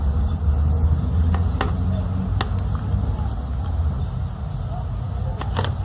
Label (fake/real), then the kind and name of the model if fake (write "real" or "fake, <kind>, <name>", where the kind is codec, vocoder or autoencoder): real